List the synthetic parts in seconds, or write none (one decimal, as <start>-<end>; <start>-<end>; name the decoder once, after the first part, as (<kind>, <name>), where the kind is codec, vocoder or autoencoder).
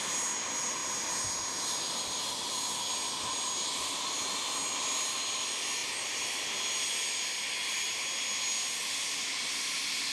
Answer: none